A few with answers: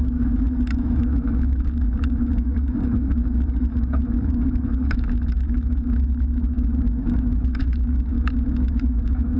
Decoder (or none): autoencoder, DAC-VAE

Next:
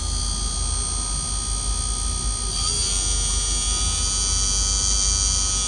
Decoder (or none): none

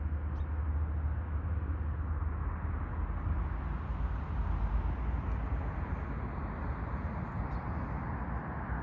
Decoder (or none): none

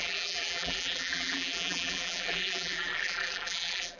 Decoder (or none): vocoder, BigVGAN v2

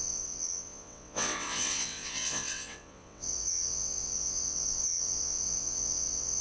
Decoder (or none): vocoder, WaveNeXt